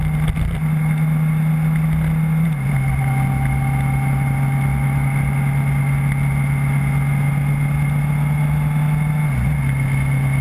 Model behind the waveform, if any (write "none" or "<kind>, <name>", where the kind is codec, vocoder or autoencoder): none